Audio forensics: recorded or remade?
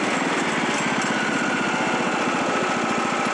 recorded